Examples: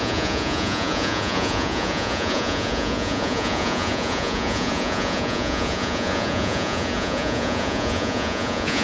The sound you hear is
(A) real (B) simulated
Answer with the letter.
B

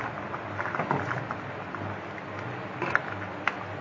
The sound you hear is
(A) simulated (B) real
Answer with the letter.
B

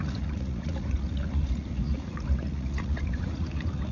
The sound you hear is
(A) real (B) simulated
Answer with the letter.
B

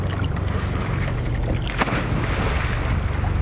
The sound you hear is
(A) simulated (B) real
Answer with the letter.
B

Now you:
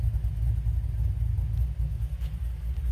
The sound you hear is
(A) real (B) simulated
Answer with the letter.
A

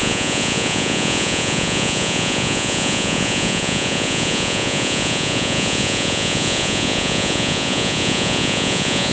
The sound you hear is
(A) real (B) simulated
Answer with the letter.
B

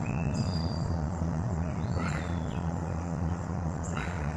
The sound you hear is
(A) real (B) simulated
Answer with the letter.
B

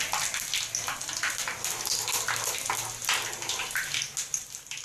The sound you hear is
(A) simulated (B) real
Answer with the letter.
B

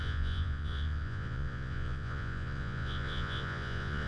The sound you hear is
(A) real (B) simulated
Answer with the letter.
B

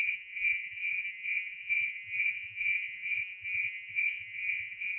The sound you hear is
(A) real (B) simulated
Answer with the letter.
B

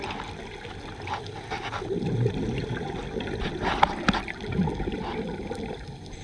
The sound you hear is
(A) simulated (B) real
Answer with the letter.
B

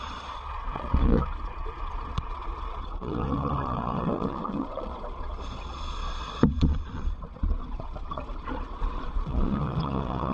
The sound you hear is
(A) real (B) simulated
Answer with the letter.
B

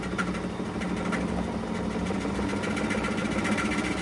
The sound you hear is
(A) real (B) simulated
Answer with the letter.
A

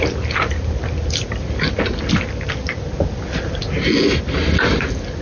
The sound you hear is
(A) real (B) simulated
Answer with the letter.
A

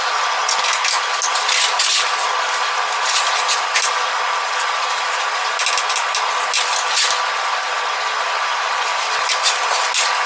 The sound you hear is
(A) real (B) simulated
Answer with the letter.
A